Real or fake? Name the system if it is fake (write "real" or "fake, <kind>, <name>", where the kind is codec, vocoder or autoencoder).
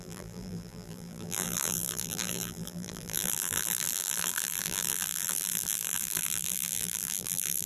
fake, vocoder, BigVGAN v2